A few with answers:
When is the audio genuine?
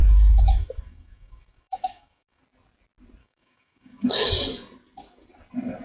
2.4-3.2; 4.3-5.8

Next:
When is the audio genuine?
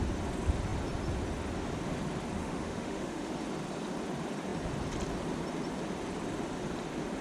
0.0-2.4; 3.3-7.2